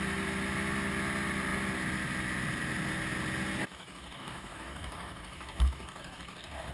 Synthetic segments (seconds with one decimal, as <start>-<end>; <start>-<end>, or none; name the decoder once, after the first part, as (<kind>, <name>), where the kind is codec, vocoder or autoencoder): 3.6-6.7 (codec, DAC)